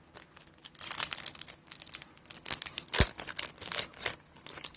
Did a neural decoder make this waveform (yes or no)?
no